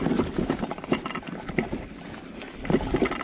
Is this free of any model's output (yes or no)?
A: yes